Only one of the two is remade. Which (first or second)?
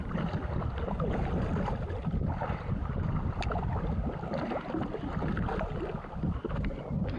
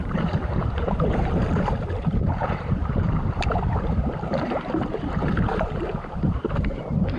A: second